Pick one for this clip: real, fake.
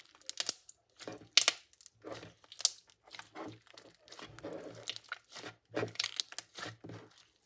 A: real